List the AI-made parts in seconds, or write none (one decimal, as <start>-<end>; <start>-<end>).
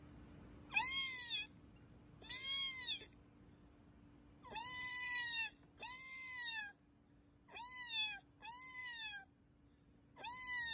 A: 4.6-6.6; 8.8-9.6